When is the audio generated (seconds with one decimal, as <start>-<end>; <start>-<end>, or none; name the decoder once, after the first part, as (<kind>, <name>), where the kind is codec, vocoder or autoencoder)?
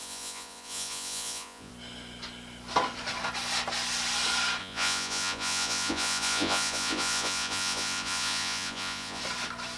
0.0-1.7 (vocoder, Vocos); 4.6-9.2